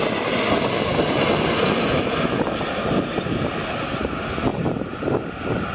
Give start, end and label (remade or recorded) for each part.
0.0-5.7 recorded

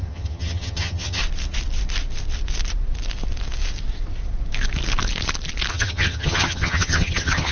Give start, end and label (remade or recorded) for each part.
0.0-1.2 remade; 1.2-5.7 recorded; 5.7-7.5 remade

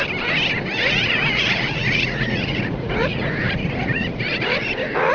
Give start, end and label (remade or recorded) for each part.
0.0-0.7 recorded; 0.7-5.1 remade

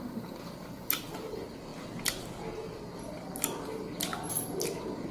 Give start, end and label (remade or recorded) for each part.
0.0-5.1 recorded